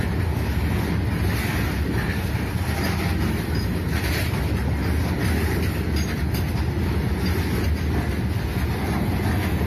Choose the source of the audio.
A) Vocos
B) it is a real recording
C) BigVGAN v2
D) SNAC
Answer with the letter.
B